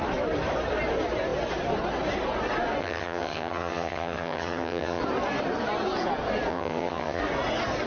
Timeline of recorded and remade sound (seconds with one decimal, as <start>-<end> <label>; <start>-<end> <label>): 0.0-2.8 recorded; 2.8-5.0 remade; 5.0-6.5 recorded; 6.5-7.2 remade; 7.2-7.9 recorded